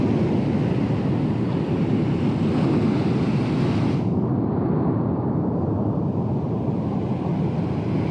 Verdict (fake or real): real